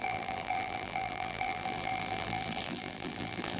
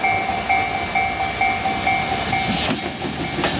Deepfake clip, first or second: first